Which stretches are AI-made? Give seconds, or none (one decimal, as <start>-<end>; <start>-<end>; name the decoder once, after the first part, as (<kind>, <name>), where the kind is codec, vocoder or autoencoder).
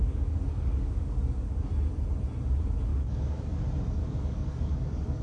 0.0-1.7 (codec, DAC); 2.9-3.6; 4.0-5.2